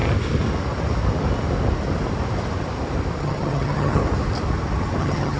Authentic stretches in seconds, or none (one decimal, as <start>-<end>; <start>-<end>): 0.0-3.2; 4.0-5.0